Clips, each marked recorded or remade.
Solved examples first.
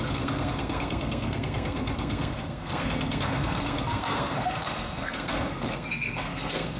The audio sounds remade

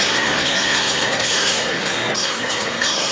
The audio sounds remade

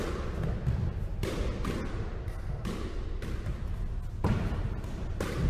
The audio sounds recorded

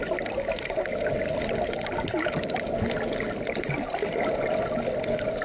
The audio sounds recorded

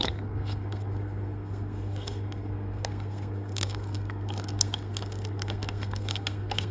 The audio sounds remade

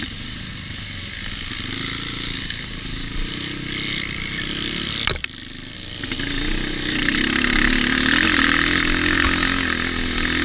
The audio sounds recorded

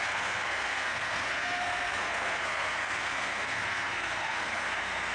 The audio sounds remade